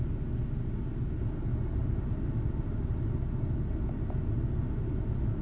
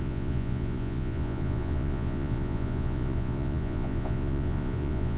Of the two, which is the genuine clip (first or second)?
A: first